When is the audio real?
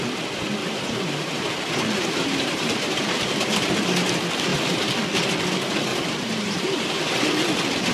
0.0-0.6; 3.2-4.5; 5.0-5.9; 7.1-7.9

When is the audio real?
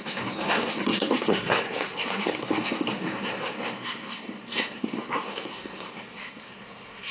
none